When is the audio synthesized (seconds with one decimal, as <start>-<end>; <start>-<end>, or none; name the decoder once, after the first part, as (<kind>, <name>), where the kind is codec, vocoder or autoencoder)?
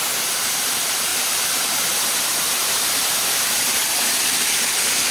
1.1-4.2 (vocoder, BigVGAN v2)